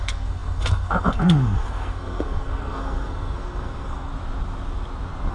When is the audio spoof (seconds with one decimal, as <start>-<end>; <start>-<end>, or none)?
0.0-4.1